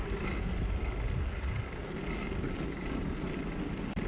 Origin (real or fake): real